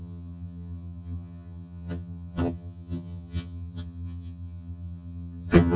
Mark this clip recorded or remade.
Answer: remade